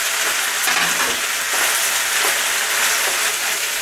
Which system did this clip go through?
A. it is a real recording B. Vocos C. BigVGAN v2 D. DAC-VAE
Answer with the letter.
A